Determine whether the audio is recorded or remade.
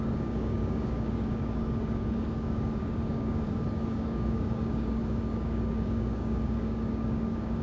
remade